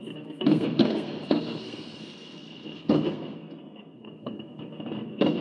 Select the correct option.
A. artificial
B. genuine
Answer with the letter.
A